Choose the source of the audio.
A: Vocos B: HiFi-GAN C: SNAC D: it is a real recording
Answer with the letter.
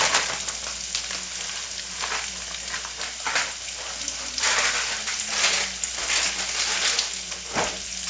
D